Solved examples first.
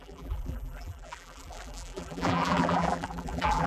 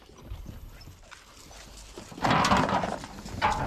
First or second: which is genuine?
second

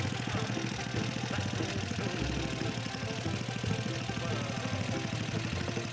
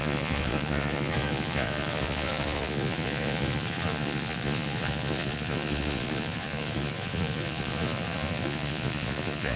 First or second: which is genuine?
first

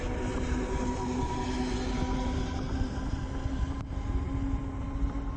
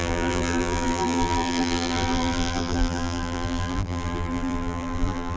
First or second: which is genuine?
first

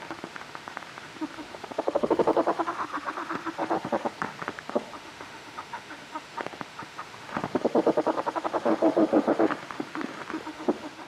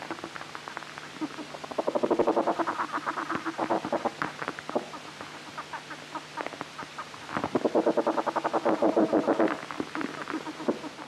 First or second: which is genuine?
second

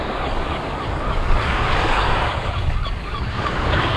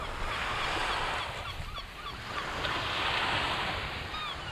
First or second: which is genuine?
second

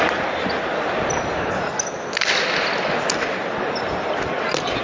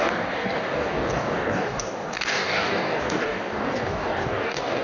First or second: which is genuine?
first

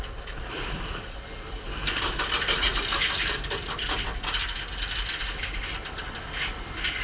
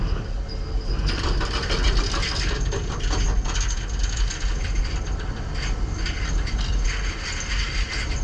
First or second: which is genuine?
second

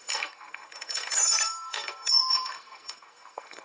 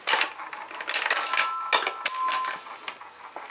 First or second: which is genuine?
second